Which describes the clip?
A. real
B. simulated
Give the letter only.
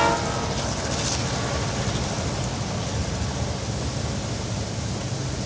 A